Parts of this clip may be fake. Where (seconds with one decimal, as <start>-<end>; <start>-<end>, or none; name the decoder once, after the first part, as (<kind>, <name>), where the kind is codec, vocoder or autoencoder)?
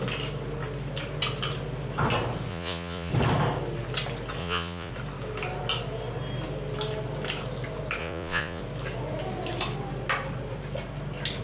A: 2.5-3.1 (vocoder, Vocos); 4.4-4.9; 8.0-8.6